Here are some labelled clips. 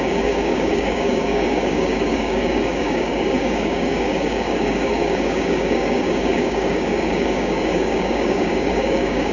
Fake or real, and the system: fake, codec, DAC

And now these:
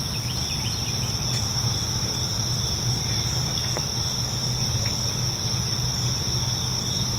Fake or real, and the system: real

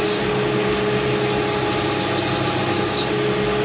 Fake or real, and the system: real